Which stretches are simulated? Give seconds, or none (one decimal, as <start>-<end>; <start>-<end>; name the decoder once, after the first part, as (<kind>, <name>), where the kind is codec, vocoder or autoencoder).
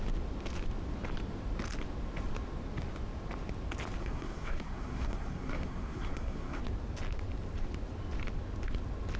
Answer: 4.0-6.6 (codec, SNAC)